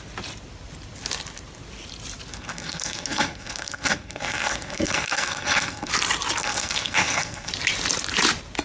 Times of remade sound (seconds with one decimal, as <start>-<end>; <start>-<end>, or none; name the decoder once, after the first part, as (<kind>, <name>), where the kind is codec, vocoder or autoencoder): 2.3-5.9 (codec, SNAC); 6.4-7.5